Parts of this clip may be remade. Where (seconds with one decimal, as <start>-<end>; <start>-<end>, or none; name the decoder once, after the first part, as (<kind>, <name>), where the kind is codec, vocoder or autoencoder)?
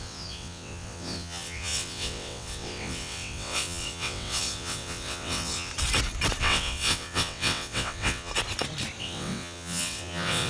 0.0-5.7 (vocoder, WaveNeXt); 6.4-8.3; 9.0-10.5